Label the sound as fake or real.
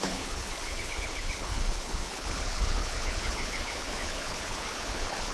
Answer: fake